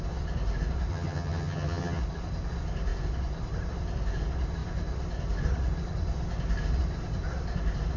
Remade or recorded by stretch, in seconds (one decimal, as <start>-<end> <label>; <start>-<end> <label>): 0.0-0.9 recorded; 0.9-2.0 remade; 2.0-8.0 recorded

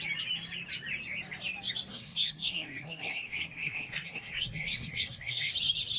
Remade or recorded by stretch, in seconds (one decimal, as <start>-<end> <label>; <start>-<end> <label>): 0.0-1.9 recorded; 1.9-5.5 remade; 5.5-6.0 recorded